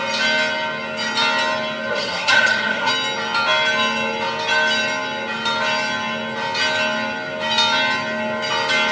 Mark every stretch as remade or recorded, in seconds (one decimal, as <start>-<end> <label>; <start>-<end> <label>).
0.0-1.9 recorded; 1.9-2.9 remade; 2.9-8.9 recorded

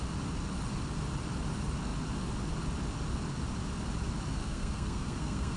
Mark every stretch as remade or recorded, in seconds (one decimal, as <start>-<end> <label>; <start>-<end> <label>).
0.0-4.3 recorded; 4.3-5.6 remade

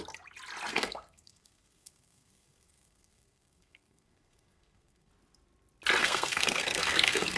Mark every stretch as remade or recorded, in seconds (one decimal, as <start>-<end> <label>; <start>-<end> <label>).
0.0-0.7 recorded; 0.7-5.1 remade; 5.1-6.0 recorded; 6.0-7.4 remade

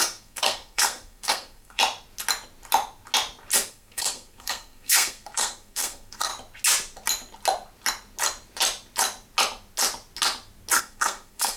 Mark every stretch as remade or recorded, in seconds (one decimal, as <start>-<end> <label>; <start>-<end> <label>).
0.0-1.8 remade; 1.8-3.7 recorded; 3.7-6.3 remade; 6.3-10.8 recorded; 10.8-11.6 remade

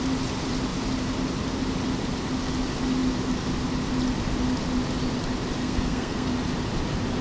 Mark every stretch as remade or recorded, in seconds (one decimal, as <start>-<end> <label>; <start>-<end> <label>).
0.0-5.6 recorded; 5.6-6.3 remade; 6.3-7.2 recorded

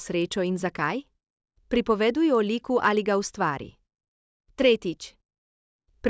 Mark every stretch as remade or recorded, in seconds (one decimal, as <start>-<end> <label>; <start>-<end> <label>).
0.0-6.1 recorded

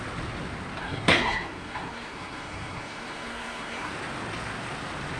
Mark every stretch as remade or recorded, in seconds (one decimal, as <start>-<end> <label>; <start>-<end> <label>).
0.0-0.8 recorded; 0.8-3.9 remade; 3.9-5.2 recorded